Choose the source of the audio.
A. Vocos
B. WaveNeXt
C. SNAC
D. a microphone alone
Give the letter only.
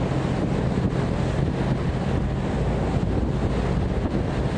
D